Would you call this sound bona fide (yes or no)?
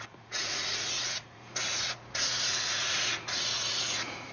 no